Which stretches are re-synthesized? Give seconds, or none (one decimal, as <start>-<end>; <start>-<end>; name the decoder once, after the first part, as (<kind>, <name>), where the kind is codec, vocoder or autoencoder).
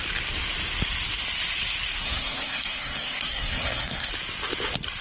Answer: 2.0-4.1 (codec, SNAC)